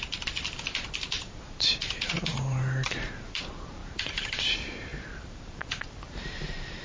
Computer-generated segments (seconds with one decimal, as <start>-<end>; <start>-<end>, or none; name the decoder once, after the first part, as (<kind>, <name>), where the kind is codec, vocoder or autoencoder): 0.0-6.8 (vocoder, BigVGAN v2)